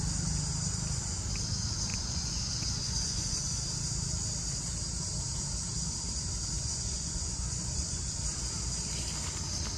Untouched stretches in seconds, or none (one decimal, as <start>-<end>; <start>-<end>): 0.0-1.9; 3.4-6.6; 8.1-9.8